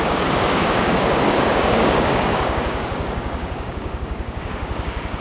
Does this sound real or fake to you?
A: fake